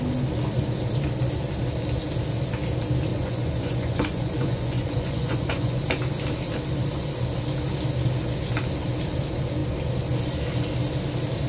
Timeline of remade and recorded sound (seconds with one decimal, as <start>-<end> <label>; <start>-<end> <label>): 0.0-3.1 recorded; 3.1-5.8 remade; 5.8-11.5 recorded